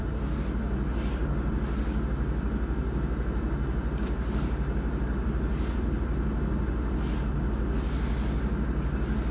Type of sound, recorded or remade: recorded